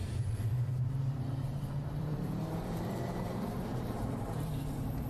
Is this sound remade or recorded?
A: remade